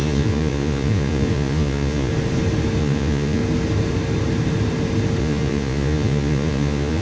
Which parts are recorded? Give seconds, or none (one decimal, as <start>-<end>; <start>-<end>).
2.1-2.8; 3.4-5.2